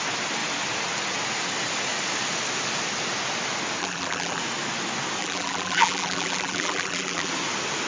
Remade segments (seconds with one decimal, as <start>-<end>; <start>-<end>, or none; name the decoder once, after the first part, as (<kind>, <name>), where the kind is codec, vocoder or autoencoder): 3.8-4.4 (vocoder, BigVGAN v2); 5.2-7.3